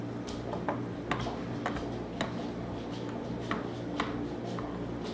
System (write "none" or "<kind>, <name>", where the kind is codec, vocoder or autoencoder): none